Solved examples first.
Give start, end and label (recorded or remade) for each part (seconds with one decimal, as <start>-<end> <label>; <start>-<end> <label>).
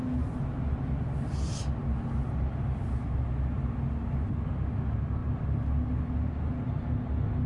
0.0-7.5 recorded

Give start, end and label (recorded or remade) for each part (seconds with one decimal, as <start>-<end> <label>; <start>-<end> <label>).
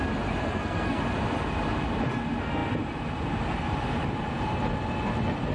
0.0-0.4 recorded; 0.4-1.0 remade; 1.0-5.5 recorded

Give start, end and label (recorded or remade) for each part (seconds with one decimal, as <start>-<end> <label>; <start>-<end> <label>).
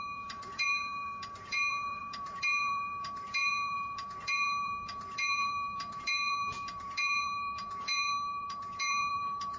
0.0-9.6 remade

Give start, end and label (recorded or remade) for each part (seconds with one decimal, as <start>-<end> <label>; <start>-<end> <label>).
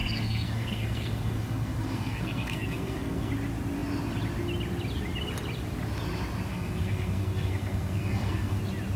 0.0-3.3 remade; 3.3-6.5 recorded; 6.5-8.6 remade; 8.6-9.0 recorded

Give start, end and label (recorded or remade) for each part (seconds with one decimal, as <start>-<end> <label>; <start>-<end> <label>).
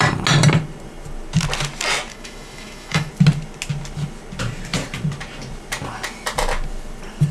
0.0-2.1 recorded; 2.1-3.1 remade; 3.1-7.3 recorded